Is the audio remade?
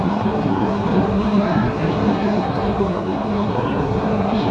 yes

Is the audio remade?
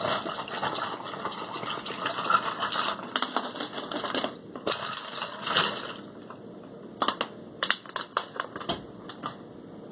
no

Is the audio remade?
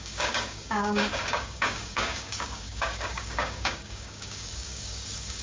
yes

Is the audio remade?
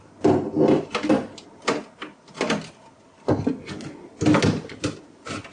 no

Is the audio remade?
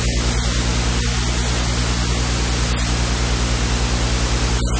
no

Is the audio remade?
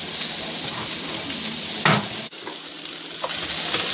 no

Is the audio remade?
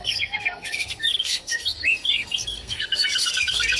yes